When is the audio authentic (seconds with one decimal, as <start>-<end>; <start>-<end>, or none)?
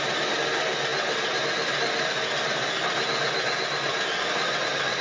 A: 0.0-5.0